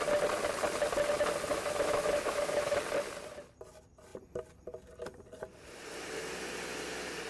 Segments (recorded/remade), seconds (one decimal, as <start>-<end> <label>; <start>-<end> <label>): 0.0-1.5 recorded; 1.5-2.8 remade; 2.8-7.3 recorded